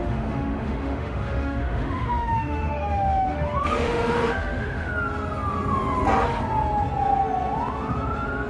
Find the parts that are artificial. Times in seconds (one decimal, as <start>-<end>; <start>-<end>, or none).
0.0-4.9